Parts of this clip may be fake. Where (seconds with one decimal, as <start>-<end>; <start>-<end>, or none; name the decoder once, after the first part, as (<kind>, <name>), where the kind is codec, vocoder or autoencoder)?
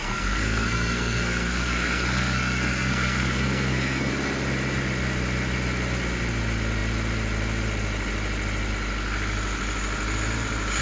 0.0-4.1 (codec, SNAC)